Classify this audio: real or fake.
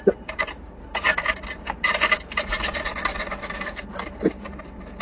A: real